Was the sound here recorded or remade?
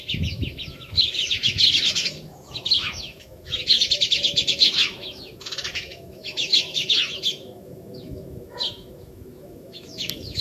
remade